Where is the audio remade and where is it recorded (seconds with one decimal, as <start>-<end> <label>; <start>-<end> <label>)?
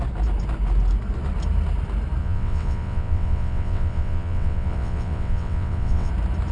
0.0-2.2 recorded; 2.2-6.1 remade; 6.1-6.5 recorded